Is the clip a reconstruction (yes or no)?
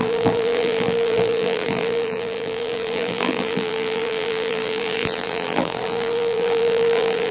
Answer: yes